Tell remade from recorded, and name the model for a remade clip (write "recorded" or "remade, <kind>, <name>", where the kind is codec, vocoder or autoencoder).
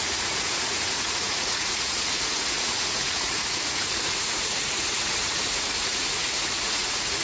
remade, vocoder, Vocos